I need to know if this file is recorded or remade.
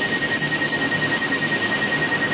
recorded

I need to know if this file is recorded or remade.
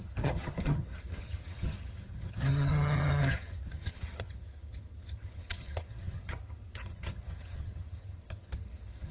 remade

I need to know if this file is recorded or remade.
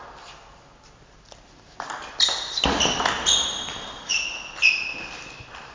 recorded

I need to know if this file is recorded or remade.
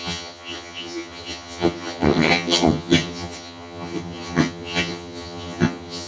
remade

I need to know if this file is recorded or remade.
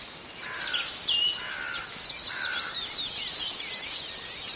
recorded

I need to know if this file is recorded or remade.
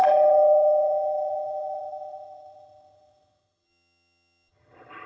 remade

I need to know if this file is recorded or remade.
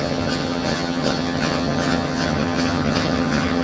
remade